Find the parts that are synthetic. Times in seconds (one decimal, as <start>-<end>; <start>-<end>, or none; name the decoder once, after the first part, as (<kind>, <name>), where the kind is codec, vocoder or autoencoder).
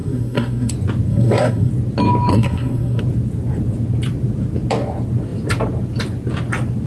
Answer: 0.0-0.7 (codec, SNAC); 1.1-1.7; 2.3-3.0